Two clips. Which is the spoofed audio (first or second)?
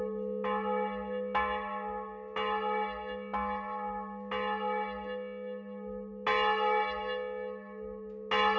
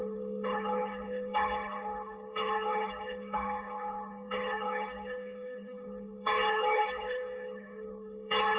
second